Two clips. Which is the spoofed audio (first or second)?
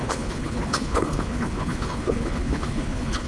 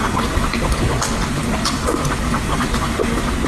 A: first